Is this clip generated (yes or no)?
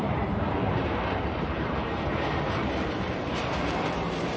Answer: yes